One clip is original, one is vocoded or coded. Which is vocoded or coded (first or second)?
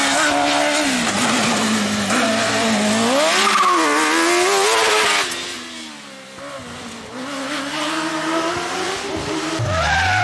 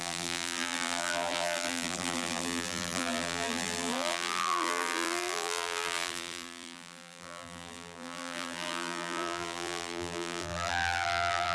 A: second